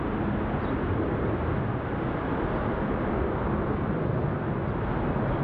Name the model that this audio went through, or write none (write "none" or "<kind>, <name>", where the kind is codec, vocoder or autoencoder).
none